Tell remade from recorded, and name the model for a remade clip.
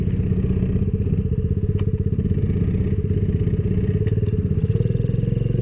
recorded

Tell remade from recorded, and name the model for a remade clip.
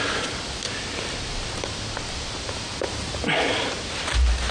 recorded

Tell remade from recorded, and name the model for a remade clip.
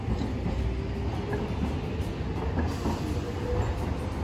recorded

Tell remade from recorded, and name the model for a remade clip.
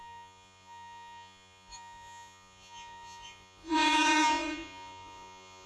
remade, vocoder, Vocos